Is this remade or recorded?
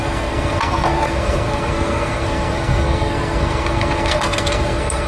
remade